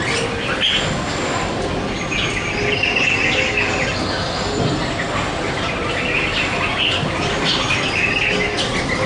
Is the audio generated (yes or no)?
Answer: no